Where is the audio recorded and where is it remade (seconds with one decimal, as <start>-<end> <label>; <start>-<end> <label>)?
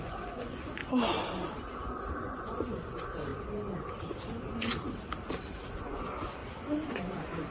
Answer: 0.0-0.8 remade; 0.8-2.2 recorded; 2.2-3.3 remade; 3.3-5.7 recorded; 5.7-7.5 remade